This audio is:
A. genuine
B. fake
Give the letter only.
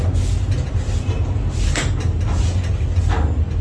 A